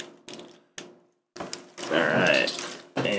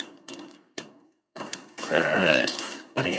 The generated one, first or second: second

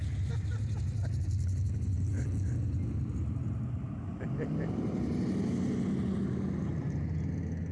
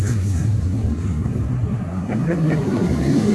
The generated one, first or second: second